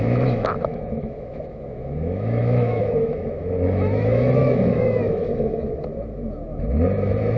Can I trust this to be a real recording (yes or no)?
no